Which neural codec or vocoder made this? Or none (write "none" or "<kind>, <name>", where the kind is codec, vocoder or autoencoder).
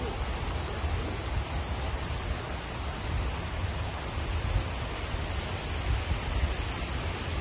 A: none